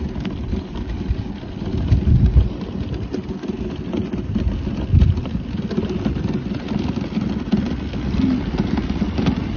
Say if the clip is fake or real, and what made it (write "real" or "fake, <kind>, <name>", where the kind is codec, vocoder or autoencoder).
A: real